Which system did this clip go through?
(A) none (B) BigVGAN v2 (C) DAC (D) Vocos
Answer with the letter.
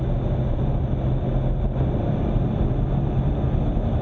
A